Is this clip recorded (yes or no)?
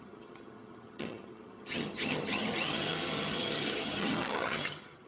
no